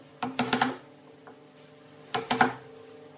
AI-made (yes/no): no